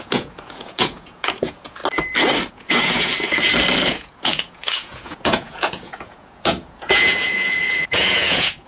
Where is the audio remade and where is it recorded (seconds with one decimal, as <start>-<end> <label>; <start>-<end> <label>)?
0.0-1.8 remade; 1.8-2.5 recorded; 2.5-3.1 remade; 3.1-3.8 recorded; 3.8-8.7 remade